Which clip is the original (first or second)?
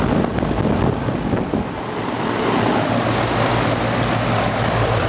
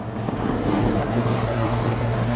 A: first